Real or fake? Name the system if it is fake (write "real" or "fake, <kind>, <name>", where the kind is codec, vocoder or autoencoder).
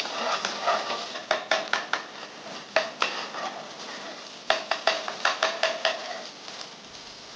real